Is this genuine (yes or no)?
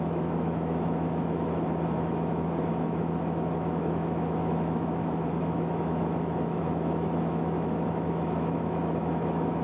no